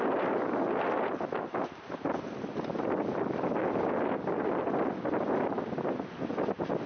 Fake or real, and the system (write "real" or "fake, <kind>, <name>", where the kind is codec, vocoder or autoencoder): real